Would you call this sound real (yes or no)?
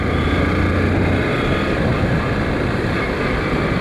yes